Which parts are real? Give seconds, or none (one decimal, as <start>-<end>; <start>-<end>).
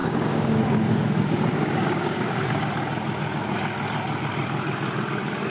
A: 2.6-5.5